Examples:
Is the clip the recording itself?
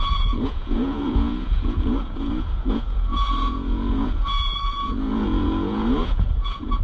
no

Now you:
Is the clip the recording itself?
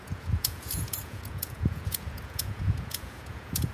no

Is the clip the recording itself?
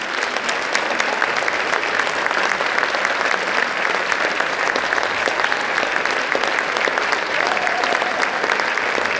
yes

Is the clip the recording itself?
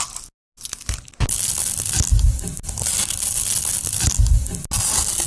yes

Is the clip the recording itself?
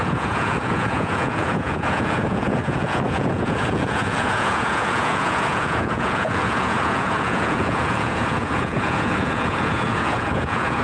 no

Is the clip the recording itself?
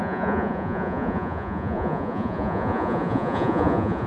no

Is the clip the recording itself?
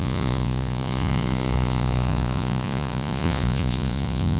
no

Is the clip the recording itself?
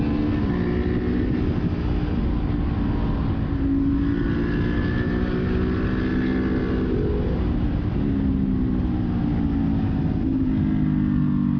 yes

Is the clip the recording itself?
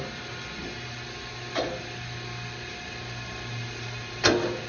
yes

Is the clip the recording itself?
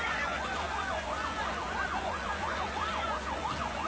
no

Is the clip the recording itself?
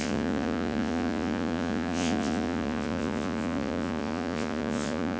no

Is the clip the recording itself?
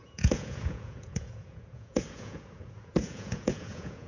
no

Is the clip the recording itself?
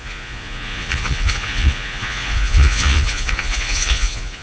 no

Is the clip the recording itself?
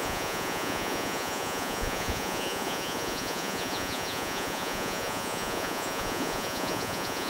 no